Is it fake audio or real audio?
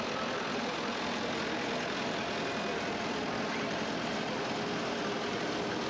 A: real